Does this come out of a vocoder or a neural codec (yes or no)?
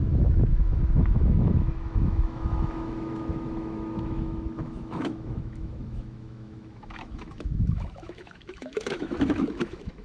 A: yes